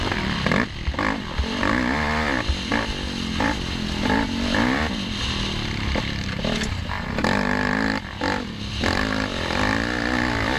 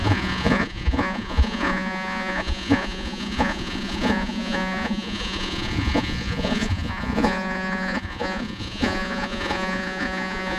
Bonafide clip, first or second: first